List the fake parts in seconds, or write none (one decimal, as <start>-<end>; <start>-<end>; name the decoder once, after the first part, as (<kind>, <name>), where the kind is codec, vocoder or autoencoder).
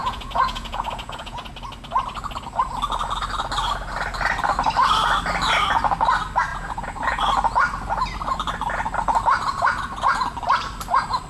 0.0-1.5 (vocoder, Vocos); 6.5-7.2